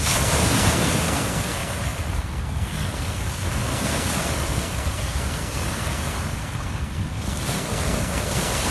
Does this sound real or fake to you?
fake